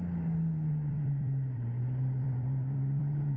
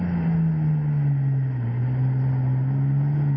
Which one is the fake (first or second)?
first